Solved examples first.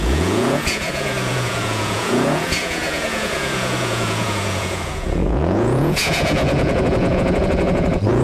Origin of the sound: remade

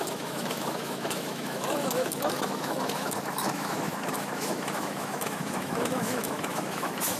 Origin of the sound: remade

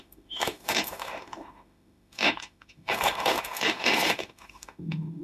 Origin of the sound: remade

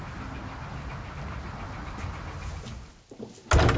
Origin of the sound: recorded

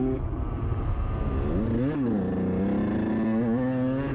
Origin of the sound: recorded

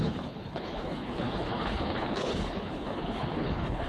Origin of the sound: remade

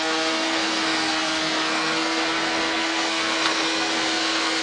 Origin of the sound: remade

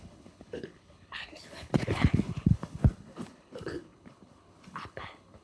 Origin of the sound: remade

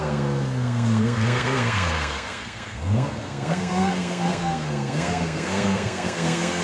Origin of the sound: remade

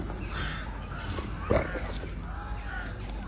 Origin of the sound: recorded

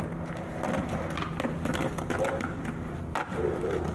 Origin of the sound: recorded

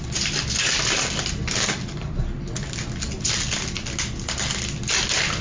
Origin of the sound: recorded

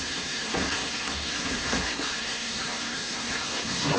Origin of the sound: remade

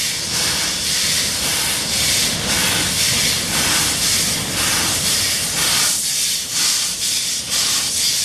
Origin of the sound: recorded